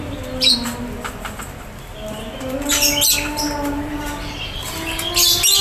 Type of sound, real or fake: real